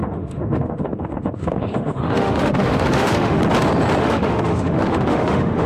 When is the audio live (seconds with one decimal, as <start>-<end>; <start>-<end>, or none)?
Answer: 3.4-4.0